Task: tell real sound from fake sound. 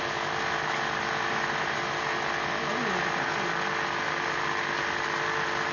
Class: real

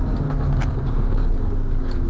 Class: fake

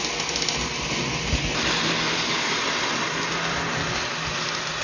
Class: real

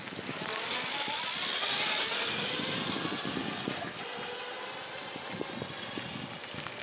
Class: real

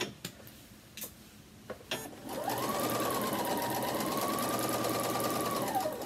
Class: real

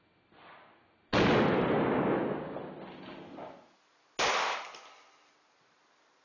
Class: real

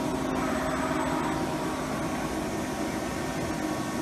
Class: real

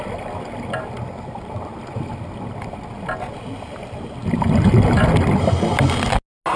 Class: real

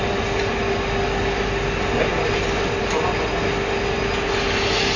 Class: real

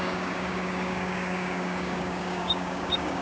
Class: fake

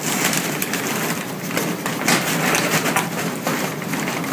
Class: real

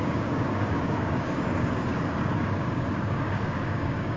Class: fake